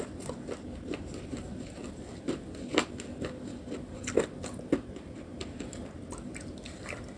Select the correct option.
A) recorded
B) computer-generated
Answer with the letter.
A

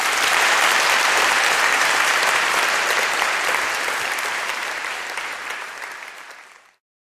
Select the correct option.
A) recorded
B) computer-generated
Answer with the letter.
B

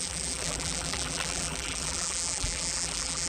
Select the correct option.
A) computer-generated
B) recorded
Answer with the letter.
A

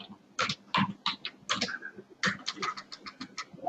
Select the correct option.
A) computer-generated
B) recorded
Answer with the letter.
B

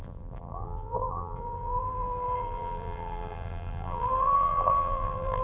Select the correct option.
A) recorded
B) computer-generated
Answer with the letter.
B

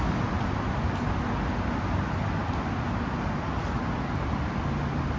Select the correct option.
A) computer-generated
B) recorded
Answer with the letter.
B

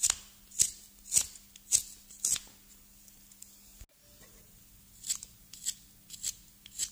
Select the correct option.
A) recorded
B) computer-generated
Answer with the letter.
A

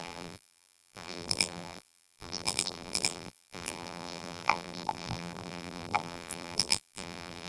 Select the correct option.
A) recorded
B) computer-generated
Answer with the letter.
B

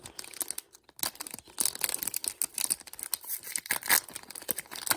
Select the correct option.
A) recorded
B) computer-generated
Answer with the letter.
A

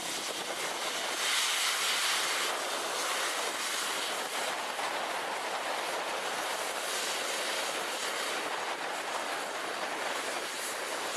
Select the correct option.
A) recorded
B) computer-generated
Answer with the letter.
A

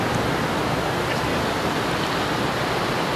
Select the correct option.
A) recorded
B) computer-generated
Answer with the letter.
A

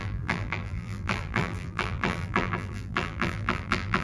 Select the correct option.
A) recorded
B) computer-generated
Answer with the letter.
B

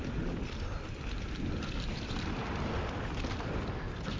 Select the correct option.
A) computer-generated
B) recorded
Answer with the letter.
B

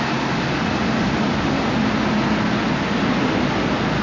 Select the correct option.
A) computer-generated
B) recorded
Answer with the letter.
B